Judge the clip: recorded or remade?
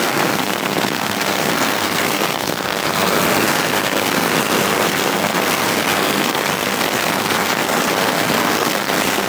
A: remade